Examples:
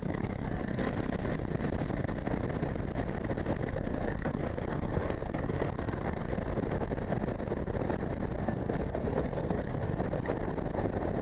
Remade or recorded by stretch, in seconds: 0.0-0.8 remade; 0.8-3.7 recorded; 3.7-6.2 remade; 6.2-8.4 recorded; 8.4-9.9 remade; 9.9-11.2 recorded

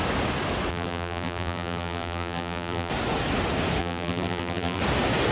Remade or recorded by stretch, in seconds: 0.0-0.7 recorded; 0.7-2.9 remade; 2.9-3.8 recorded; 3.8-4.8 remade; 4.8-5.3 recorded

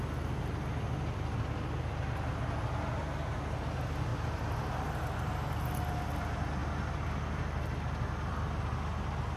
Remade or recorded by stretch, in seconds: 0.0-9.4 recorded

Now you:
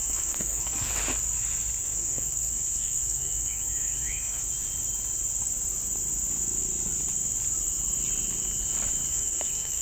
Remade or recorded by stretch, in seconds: 0.0-0.9 remade; 0.9-1.8 recorded; 1.8-4.4 remade; 4.4-9.1 recorded; 9.1-9.8 remade